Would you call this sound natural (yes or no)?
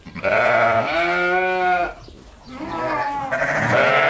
yes